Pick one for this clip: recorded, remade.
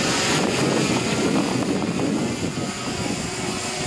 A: remade